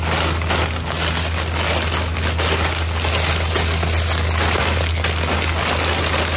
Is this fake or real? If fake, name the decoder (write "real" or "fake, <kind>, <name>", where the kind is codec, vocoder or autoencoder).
real